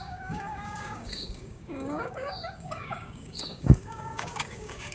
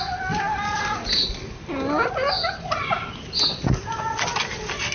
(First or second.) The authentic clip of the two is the second